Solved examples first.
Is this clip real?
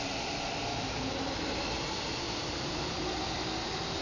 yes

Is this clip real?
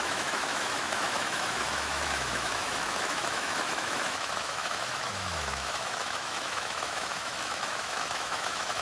no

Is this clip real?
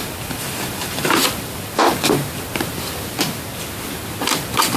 yes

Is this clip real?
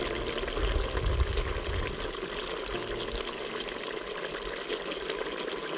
yes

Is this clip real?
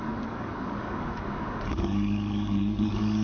no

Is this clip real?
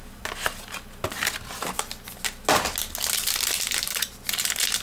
yes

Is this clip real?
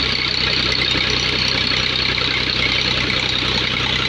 yes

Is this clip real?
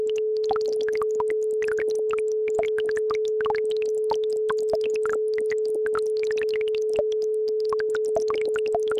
yes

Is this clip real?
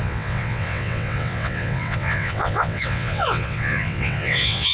no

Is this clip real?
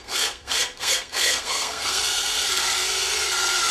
no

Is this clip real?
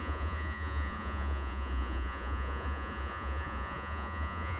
no